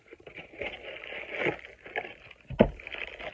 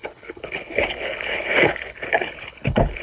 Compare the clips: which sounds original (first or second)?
first